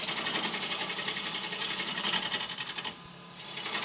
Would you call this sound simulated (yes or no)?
no